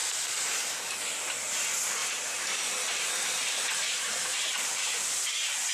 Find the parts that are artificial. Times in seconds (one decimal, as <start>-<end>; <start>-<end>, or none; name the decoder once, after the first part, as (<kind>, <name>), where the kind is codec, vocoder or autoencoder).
0.0-0.6 (vocoder, BigVGAN v2); 2.0-3.1; 4.3-5.7